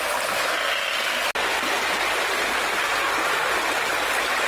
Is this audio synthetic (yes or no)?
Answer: no